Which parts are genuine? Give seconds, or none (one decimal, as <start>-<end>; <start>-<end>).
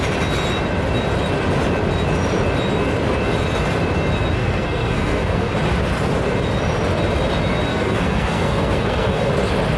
0.0-4.4; 5.6-7.7; 9.3-9.8